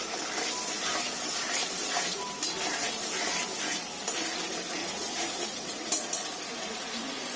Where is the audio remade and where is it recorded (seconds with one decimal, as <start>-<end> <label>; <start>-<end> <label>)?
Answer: 0.0-4.8 recorded; 4.8-7.4 remade